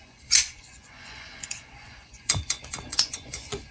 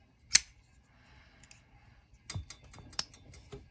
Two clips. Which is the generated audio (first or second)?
first